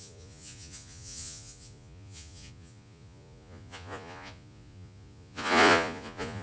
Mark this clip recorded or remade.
remade